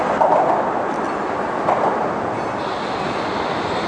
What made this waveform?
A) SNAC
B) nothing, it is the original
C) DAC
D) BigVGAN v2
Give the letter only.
B